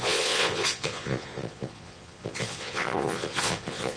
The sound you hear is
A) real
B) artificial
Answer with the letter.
B